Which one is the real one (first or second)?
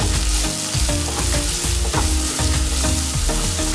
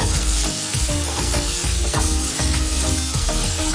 first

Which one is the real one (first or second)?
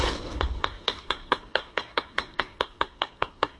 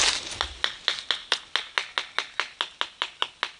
second